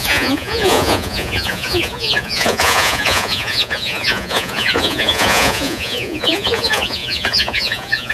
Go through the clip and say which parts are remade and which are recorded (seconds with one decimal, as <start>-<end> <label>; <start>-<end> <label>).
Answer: 0.0-8.1 remade